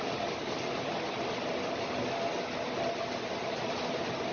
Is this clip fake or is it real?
real